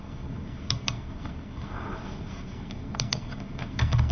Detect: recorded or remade remade